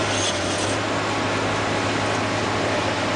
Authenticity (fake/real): real